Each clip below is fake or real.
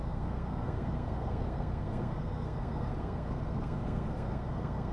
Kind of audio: fake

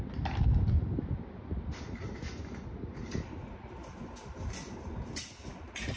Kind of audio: real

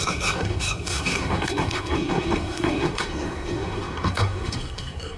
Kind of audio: fake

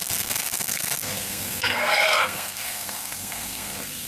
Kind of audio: fake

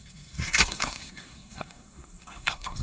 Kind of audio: fake